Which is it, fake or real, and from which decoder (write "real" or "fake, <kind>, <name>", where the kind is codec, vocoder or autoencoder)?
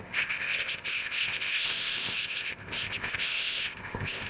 fake, codec, ZipCodec